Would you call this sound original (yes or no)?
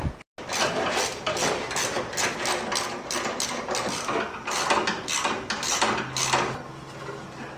yes